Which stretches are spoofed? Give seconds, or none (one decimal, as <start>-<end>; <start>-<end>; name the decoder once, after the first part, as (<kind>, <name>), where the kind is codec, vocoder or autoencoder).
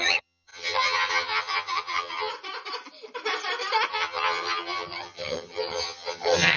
0.0-2.3 (vocoder, HiFi-GAN); 3.9-6.6